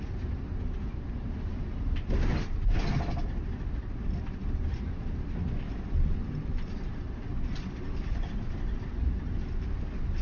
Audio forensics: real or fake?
real